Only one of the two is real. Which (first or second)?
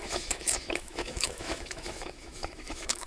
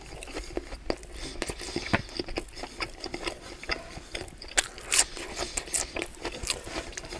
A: second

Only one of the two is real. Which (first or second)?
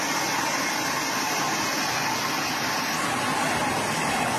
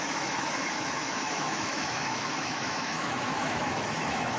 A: first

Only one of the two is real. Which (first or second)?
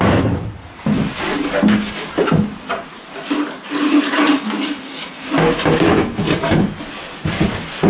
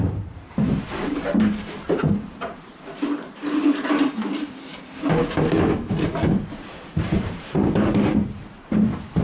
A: first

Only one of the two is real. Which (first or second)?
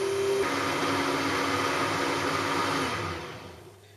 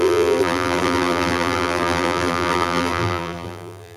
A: first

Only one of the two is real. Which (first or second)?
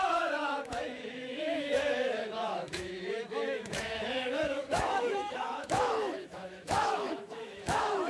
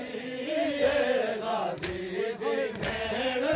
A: second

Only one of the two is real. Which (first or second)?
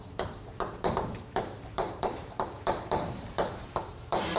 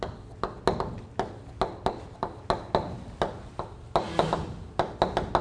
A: second